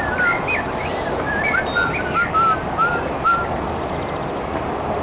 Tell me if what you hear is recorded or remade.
recorded